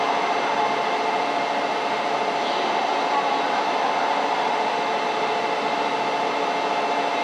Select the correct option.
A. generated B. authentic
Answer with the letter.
B